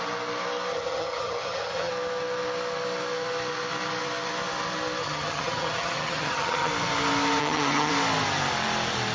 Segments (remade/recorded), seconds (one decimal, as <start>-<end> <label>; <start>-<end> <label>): 0.0-0.7 recorded; 0.7-1.9 remade; 1.9-5.0 recorded; 5.0-6.7 remade; 6.7-7.4 recorded; 7.4-7.9 remade; 7.9-9.1 recorded